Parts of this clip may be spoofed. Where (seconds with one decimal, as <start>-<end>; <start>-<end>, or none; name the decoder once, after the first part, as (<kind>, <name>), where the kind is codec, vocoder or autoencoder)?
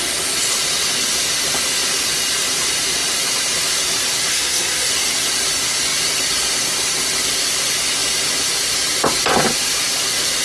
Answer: 4.3-4.9 (codec, SNAC)